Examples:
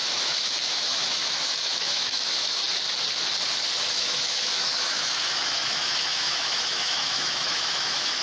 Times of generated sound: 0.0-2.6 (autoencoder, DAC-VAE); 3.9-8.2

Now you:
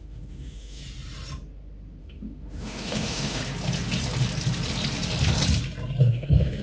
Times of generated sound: 0.0-0.8 (autoencoder, DAC-VAE); 2.0-3.4; 6.0-6.6

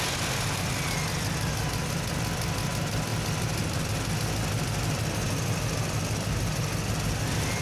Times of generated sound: none